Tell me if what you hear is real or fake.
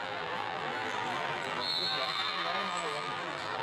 fake